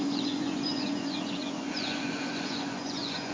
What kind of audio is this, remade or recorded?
remade